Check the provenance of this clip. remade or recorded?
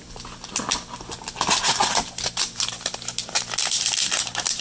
recorded